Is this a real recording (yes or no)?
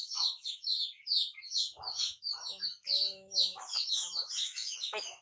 no